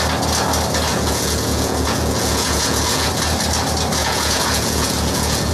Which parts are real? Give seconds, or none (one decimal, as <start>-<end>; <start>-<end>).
0.0-0.9; 3.1-4.0